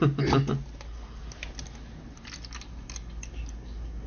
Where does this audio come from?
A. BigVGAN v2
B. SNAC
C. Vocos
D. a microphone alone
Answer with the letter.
D